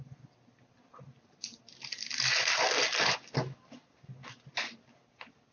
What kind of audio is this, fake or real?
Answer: real